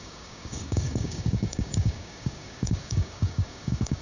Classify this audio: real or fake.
fake